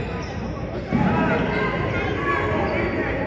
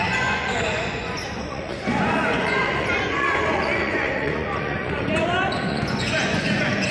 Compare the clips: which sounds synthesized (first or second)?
second